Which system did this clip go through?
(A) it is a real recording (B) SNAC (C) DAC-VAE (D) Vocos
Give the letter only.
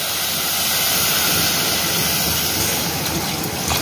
A